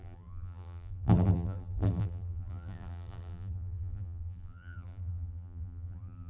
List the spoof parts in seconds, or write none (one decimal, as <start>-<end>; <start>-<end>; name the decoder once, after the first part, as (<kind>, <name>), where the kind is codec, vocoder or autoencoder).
0.0-6.3 (vocoder, BigVGAN v2)